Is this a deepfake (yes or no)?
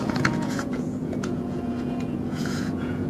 yes